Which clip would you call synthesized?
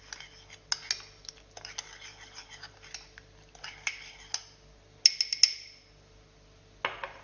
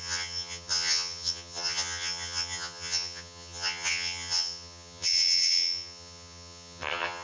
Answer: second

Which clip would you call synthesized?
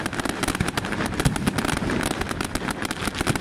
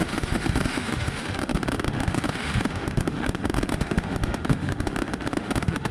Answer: second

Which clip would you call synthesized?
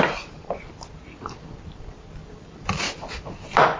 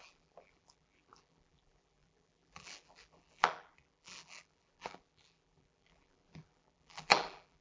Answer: second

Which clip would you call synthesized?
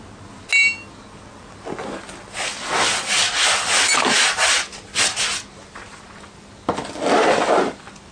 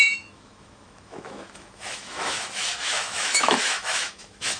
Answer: second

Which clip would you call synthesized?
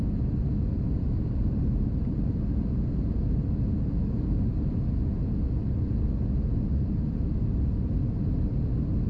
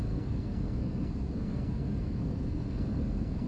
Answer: second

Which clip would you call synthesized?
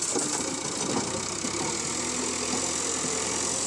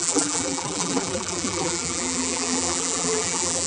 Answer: second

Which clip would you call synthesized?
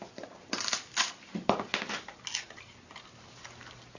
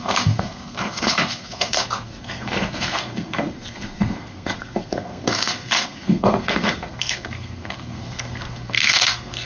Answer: second